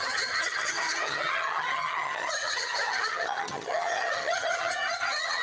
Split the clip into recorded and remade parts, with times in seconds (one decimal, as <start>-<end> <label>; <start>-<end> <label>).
0.0-5.4 remade

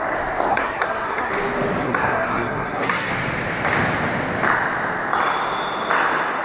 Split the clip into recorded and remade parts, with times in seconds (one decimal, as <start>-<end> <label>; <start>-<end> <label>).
0.0-0.5 recorded; 0.5-1.3 remade; 1.3-1.8 recorded; 1.8-3.1 remade; 3.1-6.4 recorded

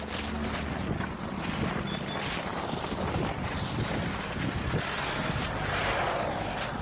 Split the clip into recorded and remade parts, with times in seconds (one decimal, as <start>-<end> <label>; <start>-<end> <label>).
0.0-6.8 recorded

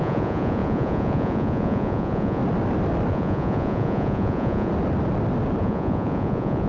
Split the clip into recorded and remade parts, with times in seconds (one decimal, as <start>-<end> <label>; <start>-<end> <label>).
0.0-2.4 remade; 2.4-3.1 recorded; 3.1-4.7 remade; 4.7-5.6 recorded; 5.6-6.7 remade

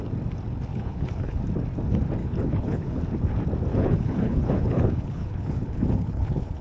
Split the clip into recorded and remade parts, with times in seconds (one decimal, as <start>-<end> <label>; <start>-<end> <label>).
0.0-0.7 recorded; 0.7-1.4 remade; 1.4-2.2 recorded; 2.2-3.0 remade; 3.0-3.7 recorded; 3.7-6.6 remade

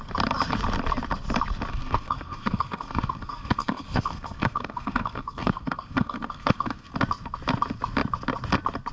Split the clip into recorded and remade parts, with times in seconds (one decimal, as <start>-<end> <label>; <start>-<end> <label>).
0.0-1.7 recorded; 1.7-6.9 remade; 6.9-8.9 recorded